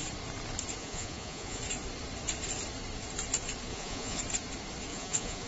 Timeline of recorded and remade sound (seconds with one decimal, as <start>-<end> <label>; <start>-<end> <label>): 0.0-0.8 recorded; 0.8-1.6 remade; 1.6-3.7 recorded; 3.7-4.2 remade; 4.2-4.9 recorded; 4.9-5.5 remade